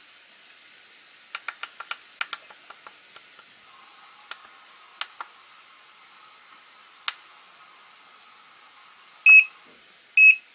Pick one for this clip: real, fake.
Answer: real